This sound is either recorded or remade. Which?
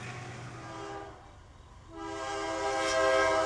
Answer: recorded